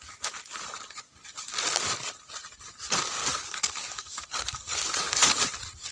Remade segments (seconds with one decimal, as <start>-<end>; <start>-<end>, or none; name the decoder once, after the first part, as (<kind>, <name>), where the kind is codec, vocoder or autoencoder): 3.2-5.4 (codec, DAC)